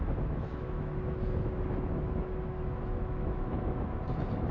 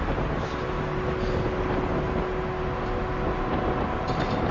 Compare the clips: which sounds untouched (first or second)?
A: second